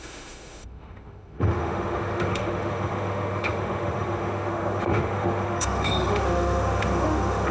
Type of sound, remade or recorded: remade